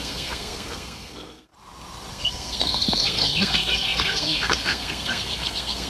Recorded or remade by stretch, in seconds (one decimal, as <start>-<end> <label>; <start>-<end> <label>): 0.0-1.5 remade; 1.5-2.1 recorded; 2.1-5.9 remade